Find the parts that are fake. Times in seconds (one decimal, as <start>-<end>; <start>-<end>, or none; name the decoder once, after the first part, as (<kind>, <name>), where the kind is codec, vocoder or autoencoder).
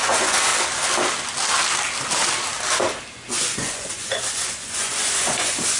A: 0.0-0.5 (vocoder, Vocos); 3.1-5.8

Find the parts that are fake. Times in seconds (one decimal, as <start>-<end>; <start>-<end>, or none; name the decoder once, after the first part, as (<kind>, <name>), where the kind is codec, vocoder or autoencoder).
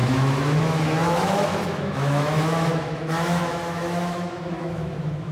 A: 0.0-5.3 (autoencoder, DAC-VAE)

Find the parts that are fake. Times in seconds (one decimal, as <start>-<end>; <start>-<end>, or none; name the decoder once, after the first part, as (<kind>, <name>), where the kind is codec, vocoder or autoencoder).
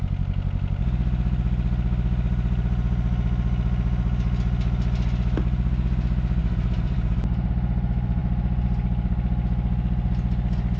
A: 6.4-7.5 (vocoder, BigVGAN v2)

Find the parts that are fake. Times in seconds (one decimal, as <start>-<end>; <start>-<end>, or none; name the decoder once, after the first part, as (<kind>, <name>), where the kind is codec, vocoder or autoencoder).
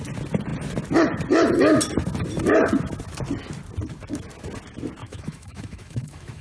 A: 5.0-6.4 (autoencoder, DAC-VAE)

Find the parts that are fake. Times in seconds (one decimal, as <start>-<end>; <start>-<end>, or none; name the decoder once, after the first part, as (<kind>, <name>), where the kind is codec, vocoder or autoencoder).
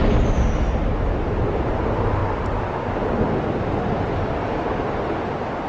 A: none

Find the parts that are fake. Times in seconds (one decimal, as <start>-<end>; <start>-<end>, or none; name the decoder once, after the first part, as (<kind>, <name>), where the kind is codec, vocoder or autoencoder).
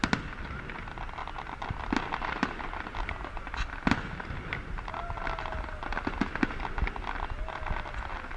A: none